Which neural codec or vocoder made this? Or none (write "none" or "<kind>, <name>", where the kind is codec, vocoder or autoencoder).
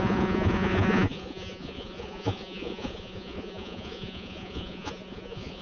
vocoder, Vocos